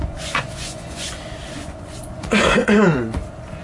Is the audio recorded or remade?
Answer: remade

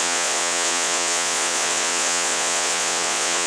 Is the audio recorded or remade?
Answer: remade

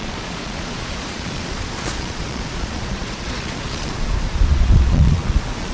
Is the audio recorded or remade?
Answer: remade